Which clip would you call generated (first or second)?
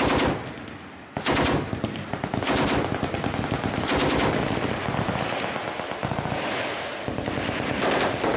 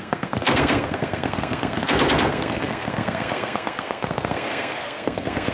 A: second